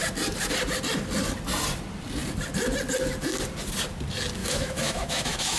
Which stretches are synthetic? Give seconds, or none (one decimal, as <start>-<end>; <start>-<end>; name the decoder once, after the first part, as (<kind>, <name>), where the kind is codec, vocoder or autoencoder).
4.4-5.6 (autoencoder, DAC-VAE)